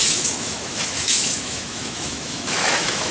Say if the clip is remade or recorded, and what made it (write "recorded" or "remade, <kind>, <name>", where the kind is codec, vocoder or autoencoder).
remade, autoencoder, DAC-VAE